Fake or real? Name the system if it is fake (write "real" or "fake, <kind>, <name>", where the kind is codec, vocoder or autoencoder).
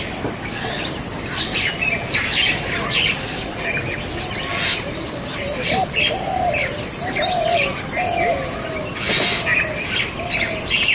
real